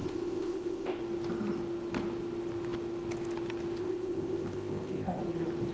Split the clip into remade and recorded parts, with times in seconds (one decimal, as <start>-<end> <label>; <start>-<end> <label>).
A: 0.0-1.0 remade; 1.0-3.8 recorded; 3.8-5.2 remade; 5.2-5.7 recorded